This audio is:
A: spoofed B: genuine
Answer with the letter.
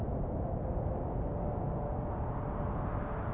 B